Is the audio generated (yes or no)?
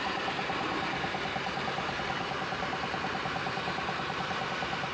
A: yes